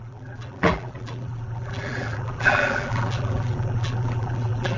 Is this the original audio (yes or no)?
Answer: no